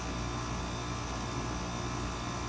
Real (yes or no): yes